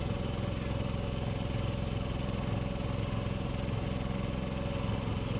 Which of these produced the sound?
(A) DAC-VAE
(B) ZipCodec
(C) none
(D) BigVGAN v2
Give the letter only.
C